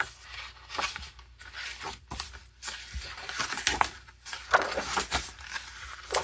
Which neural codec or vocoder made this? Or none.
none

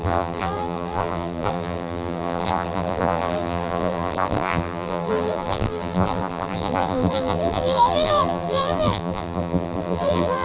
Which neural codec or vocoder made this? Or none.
vocoder, BigVGAN v2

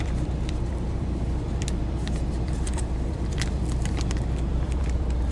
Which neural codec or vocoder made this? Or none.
vocoder, BigVGAN v2